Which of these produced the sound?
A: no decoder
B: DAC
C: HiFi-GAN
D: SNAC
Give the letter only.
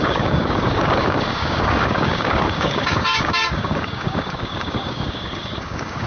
B